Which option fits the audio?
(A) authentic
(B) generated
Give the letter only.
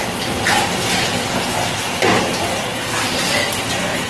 A